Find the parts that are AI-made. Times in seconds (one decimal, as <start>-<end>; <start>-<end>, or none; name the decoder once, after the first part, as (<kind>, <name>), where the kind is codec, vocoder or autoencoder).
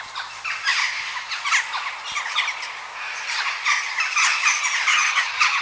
4.9-5.6 (vocoder, HiFi-GAN)